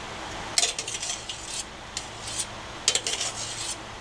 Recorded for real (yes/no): yes